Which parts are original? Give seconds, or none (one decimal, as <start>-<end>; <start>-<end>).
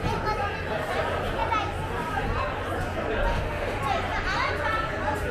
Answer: 0.0-3.3; 3.8-5.3